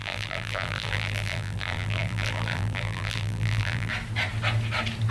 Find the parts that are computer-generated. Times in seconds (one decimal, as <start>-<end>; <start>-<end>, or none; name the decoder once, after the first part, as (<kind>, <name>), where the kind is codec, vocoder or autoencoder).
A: 0.0-3.9 (vocoder, BigVGAN v2)